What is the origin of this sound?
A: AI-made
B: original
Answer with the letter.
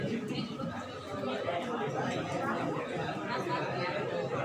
B